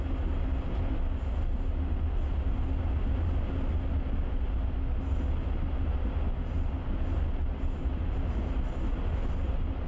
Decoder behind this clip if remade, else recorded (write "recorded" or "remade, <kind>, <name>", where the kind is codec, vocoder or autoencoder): recorded